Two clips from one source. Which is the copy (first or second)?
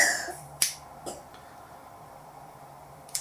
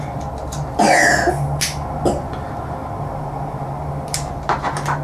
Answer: first